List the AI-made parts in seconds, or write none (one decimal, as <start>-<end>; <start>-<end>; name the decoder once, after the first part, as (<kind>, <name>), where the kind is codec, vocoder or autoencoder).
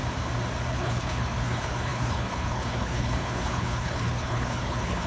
0.7-5.1 (codec, HILCodec)